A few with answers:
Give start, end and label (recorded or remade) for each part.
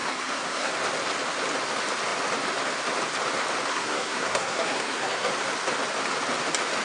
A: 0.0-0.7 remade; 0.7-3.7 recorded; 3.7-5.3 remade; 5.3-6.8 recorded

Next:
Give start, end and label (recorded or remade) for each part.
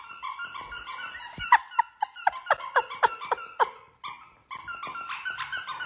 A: 0.0-5.9 recorded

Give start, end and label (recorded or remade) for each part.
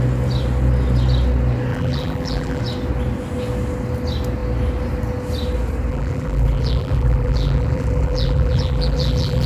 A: 0.0-1.7 recorded; 1.7-2.6 remade; 2.6-5.9 recorded; 5.9-9.5 remade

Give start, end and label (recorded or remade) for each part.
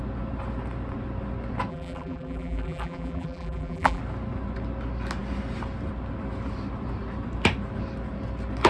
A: 0.0-1.7 recorded; 1.7-4.0 remade; 4.0-8.7 recorded